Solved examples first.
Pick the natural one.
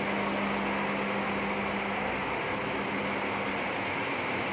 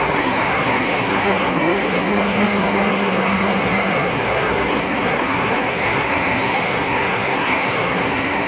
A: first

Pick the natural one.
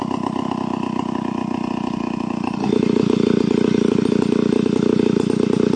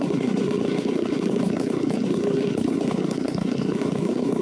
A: first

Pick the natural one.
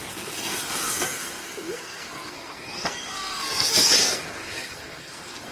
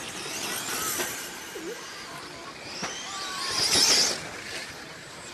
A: second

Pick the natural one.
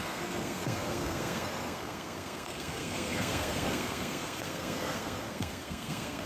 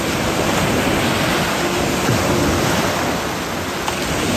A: second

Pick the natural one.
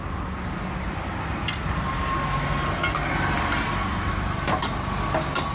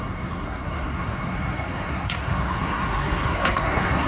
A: first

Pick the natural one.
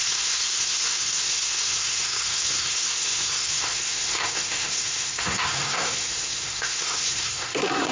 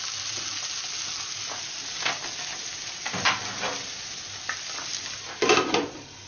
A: second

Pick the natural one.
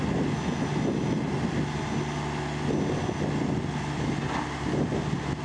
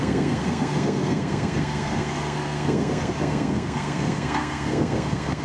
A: first